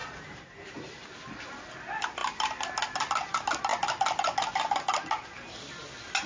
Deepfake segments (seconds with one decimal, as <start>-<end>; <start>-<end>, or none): 0.0-0.9